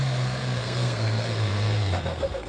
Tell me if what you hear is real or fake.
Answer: fake